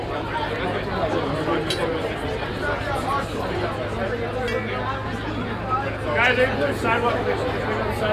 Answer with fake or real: real